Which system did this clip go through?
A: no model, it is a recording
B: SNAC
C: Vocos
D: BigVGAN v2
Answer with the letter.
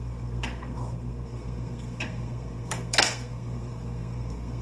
B